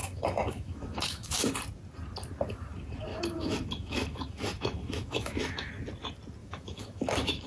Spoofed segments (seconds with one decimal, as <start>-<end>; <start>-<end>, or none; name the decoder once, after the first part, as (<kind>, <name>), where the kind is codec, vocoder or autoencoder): 0.0-1.5 (autoencoder, DAC-VAE); 3.1-5.7; 6.4-7.5